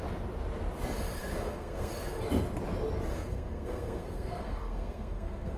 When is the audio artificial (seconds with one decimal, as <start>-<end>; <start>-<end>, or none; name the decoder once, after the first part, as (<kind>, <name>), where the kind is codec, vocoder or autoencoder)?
1.2-1.9 (codec, SNAC); 3.1-5.6